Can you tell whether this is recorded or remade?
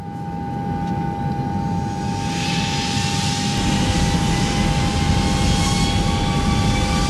recorded